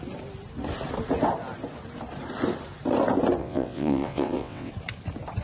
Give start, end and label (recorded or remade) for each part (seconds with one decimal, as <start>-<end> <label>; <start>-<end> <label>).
0.0-3.4 recorded; 3.4-4.7 remade; 4.7-5.4 recorded